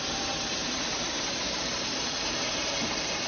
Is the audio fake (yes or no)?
yes